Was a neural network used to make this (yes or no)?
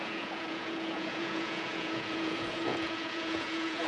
yes